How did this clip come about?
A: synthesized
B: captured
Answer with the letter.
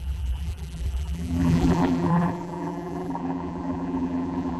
A